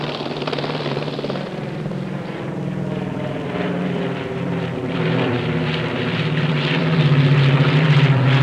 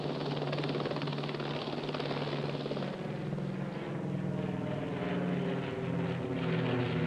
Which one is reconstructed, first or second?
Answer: first